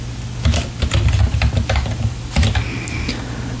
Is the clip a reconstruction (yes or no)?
no